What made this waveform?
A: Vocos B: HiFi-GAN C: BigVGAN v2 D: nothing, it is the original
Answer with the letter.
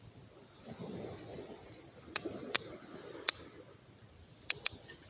D